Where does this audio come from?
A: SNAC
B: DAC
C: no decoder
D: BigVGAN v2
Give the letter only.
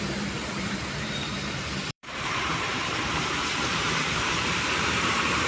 D